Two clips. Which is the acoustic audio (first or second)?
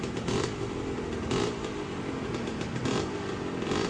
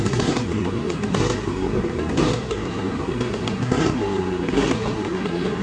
first